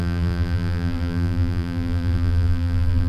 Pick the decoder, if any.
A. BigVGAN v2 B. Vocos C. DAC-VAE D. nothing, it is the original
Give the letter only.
A